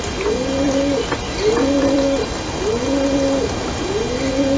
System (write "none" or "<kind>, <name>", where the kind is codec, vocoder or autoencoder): none